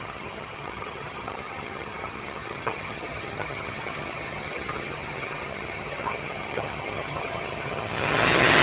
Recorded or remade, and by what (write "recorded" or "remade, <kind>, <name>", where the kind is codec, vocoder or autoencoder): remade, vocoder, HiFi-GAN